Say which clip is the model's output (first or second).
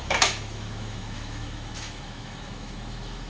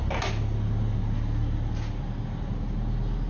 first